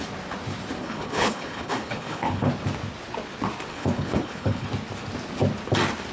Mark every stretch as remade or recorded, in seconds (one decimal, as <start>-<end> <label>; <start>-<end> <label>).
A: 0.0-0.8 recorded; 0.8-2.5 remade; 2.5-3.7 recorded; 3.7-4.7 remade; 4.7-6.1 recorded